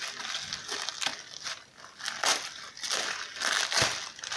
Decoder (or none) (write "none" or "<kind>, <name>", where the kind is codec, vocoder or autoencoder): none